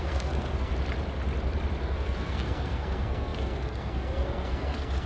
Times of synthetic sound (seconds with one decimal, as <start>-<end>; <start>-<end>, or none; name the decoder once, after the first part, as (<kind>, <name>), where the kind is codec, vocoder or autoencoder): 0.0-0.7 (codec, SNAC); 1.8-5.1